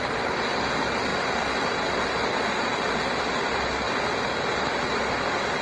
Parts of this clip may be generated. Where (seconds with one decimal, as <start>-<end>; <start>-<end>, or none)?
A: none